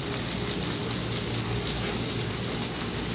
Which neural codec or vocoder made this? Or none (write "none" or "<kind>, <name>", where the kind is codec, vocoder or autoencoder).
none